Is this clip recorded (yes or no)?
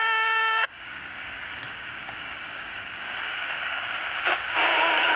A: no